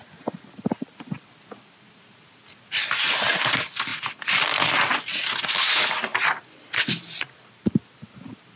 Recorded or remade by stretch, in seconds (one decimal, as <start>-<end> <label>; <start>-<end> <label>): 0.0-8.6 recorded